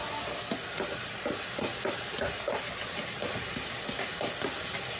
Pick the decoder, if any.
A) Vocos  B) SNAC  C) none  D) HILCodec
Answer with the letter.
C